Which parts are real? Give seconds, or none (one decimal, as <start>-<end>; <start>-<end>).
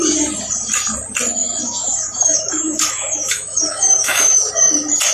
0.0-1.4; 4.5-5.1